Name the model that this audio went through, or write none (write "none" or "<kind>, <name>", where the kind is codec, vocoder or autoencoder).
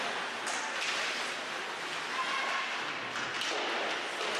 none